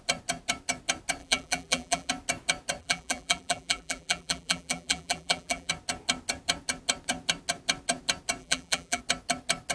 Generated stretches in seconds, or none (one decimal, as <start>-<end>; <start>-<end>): 1.2-2.1; 2.8-5.7; 8.4-9.0